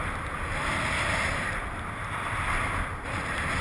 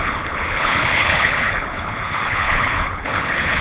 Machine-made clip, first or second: second